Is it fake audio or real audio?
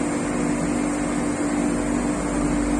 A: real